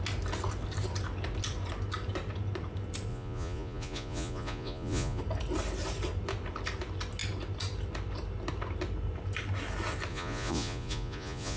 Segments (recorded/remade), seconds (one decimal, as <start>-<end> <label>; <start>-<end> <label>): 0.0-3.1 recorded; 3.1-5.2 remade; 5.2-10.1 recorded; 10.1-11.6 remade